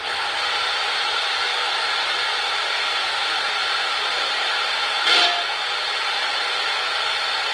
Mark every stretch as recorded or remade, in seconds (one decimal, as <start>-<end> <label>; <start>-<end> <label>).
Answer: 0.0-3.2 recorded; 3.2-5.2 remade; 5.2-7.5 recorded